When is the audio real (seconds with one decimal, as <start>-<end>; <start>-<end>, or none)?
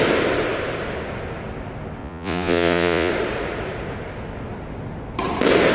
0.0-2.0; 3.1-5.7